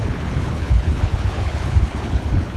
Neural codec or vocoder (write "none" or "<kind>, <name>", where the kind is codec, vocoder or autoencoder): codec, HILCodec